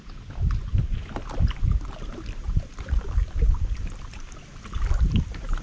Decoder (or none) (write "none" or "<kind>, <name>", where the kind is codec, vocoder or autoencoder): vocoder, BigVGAN v2